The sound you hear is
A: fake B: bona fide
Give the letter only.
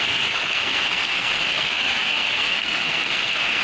A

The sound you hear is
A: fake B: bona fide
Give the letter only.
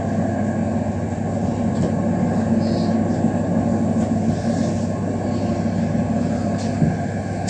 B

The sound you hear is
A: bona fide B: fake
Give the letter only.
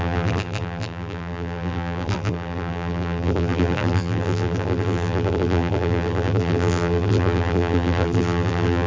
B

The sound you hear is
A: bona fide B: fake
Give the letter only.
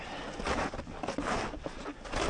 A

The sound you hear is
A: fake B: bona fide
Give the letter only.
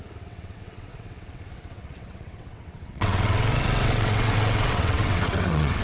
A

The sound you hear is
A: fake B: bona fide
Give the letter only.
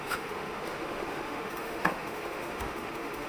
A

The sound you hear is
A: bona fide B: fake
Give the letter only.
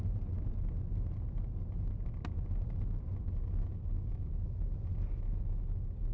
A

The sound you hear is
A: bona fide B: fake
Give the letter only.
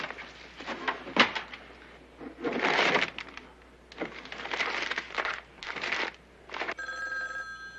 A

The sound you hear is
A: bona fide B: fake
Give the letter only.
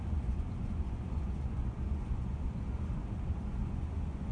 B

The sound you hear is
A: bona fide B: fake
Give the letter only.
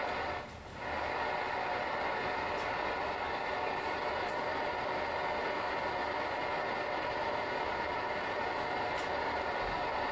A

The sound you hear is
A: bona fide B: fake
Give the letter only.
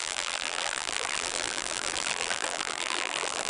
B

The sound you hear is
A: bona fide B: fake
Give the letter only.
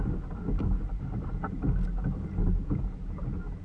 A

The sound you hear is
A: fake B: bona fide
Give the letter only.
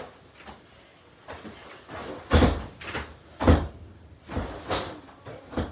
B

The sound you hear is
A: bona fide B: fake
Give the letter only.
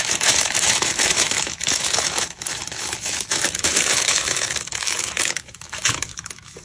B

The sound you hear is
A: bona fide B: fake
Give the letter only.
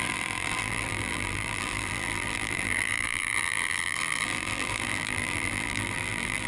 B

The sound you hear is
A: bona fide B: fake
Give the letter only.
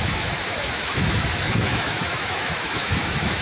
B